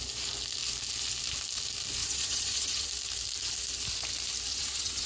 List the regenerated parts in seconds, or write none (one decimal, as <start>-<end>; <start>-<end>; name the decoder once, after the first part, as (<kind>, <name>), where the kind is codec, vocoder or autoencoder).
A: 2.0-2.9 (vocoder, WaveNeXt); 4.5-5.1